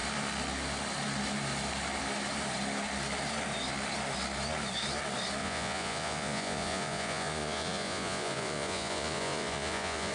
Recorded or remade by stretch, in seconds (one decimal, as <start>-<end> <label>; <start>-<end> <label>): 0.0-5.4 recorded; 5.4-10.1 remade